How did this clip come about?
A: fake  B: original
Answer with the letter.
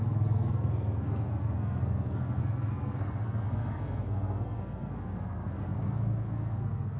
A